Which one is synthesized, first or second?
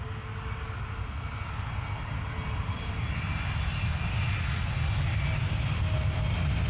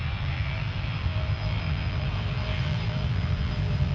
second